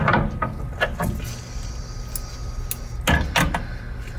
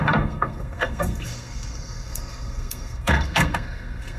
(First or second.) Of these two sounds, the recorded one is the first